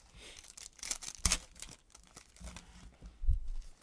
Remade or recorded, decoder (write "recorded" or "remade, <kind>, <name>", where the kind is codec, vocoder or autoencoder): recorded